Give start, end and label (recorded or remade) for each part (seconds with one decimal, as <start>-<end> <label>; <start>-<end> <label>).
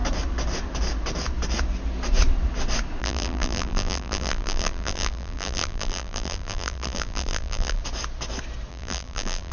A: 0.0-3.0 recorded; 3.0-7.8 remade; 7.8-8.7 recorded; 8.7-9.5 remade